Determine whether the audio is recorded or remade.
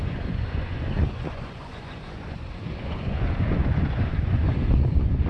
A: remade